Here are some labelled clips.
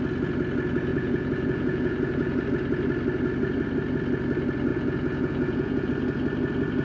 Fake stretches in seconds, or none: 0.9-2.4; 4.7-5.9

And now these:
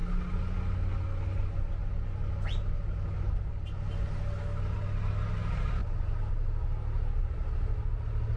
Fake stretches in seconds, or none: none

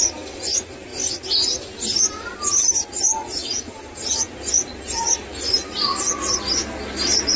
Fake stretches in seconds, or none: 3.4-4.3